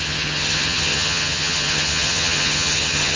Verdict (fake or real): fake